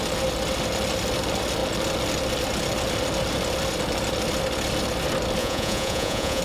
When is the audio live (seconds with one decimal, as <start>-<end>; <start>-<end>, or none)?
0.0-5.4